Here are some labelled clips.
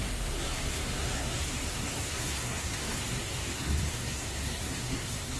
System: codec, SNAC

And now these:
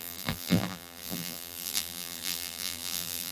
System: vocoder, BigVGAN v2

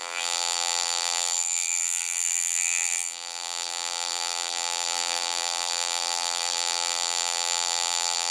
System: vocoder, BigVGAN v2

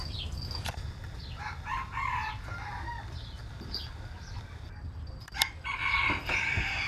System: none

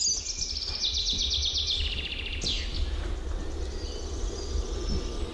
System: none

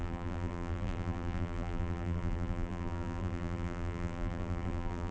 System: vocoder, BigVGAN v2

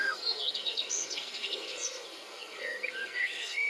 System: codec, SNAC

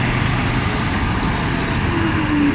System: none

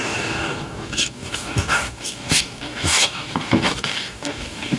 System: codec, DAC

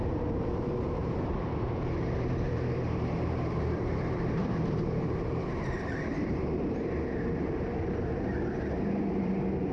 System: vocoder, BigVGAN v2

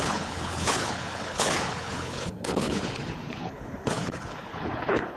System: codec, HILCodec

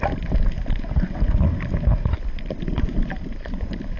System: none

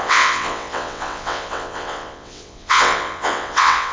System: vocoder, WaveNeXt